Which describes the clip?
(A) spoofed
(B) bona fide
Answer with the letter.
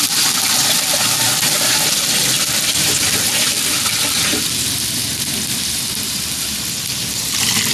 B